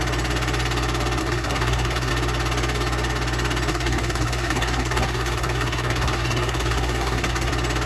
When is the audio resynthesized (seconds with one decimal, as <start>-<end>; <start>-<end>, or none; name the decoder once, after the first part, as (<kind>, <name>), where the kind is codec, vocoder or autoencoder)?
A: 1.2-2.1 (codec, SNAC); 3.7-7.5